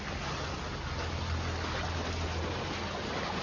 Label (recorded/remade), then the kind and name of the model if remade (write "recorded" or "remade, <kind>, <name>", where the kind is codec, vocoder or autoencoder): recorded